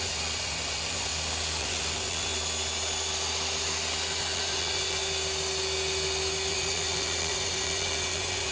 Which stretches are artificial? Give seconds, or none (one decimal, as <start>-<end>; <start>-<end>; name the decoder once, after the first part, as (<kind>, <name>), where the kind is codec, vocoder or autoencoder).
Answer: 0.0-1.1 (vocoder, Vocos); 1.6-2.3; 4.2-5.0; 6.5-8.5